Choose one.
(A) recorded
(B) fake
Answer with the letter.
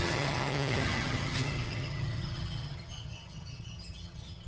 B